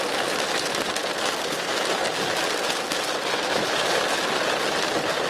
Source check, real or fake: real